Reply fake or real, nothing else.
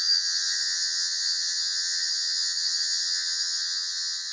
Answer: fake